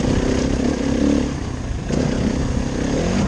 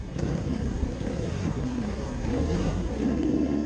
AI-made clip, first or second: second